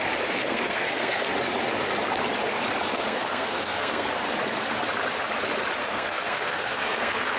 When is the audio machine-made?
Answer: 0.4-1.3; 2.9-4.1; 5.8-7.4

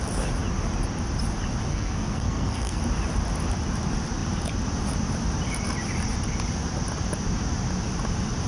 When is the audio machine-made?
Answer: 1.7-2.8

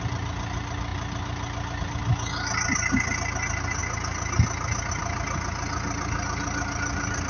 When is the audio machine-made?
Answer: none

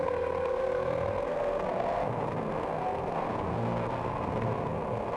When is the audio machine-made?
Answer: 0.0-5.2

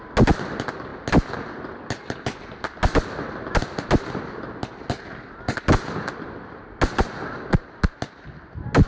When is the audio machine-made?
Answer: none

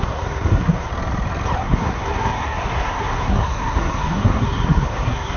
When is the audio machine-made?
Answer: 0.0-0.9; 1.6-5.4

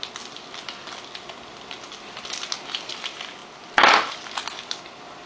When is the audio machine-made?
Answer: none

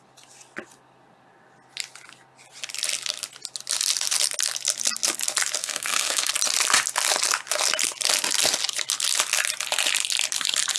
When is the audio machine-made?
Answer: 5.6-6.3